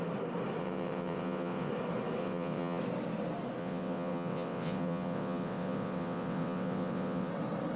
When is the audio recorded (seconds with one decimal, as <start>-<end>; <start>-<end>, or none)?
0.0-0.6; 1.7-2.2; 2.8-3.6; 7.3-7.8